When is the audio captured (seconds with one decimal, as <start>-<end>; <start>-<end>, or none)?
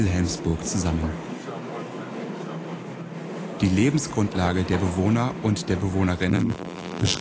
0.0-6.3